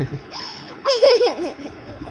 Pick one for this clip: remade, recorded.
remade